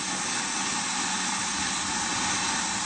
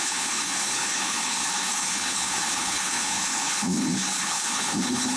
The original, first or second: first